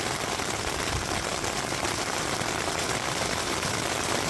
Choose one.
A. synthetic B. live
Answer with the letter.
A